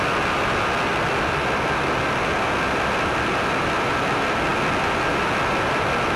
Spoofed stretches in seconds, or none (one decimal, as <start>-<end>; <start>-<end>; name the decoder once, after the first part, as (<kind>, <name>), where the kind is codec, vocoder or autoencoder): none